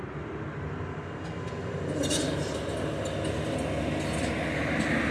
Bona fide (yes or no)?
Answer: yes